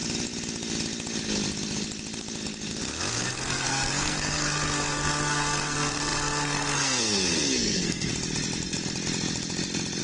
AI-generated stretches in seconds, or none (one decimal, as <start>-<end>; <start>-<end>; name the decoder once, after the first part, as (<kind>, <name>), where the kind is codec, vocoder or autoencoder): 3.1-8.1 (codec, SNAC)